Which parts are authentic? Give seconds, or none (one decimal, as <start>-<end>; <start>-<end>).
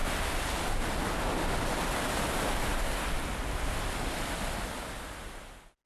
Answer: 0.0-5.9